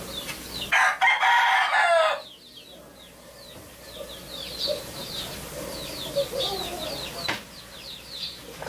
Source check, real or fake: real